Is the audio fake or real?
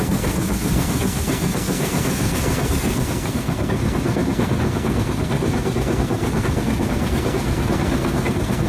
fake